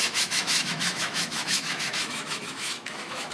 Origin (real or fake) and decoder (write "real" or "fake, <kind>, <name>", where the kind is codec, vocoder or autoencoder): fake, autoencoder, DAC-VAE